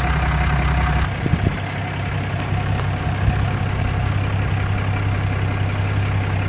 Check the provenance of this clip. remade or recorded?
recorded